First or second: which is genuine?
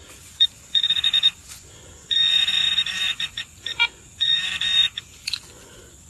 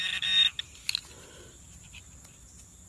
second